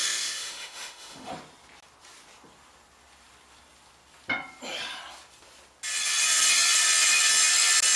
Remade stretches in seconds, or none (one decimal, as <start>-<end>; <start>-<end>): 0.0-1.3